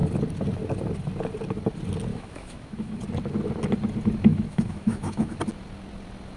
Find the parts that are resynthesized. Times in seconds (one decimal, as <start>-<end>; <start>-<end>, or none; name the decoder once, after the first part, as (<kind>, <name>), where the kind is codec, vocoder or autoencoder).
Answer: 2.1-3.0 (autoencoder, DAC-VAE); 4.3-5.4